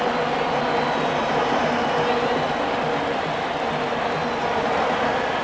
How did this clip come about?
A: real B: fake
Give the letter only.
A